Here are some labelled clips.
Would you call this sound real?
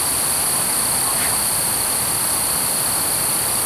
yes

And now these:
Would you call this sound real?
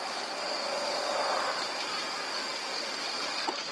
yes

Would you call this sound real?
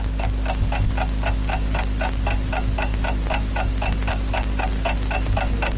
yes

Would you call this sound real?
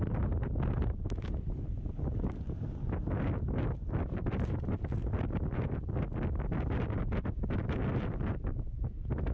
yes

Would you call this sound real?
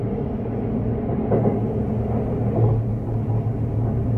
yes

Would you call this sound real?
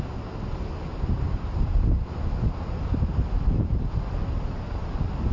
yes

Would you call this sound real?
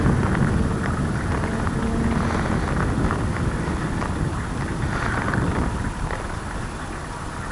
yes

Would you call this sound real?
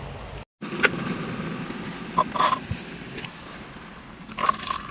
yes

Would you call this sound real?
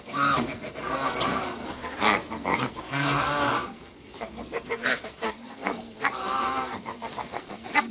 no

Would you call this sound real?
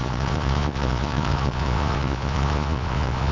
no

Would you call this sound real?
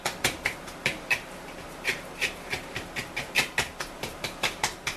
yes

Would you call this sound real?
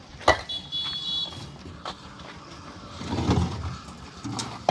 yes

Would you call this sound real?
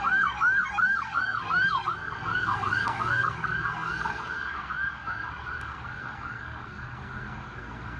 no